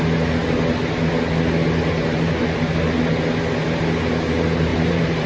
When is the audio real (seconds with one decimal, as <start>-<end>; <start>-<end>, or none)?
0.0-4.7